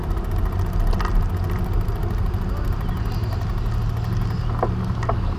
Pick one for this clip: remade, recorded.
recorded